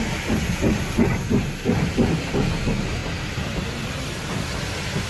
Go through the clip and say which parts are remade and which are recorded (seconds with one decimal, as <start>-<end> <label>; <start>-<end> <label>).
0.0-3.0 recorded; 3.0-4.3 remade; 4.3-5.1 recorded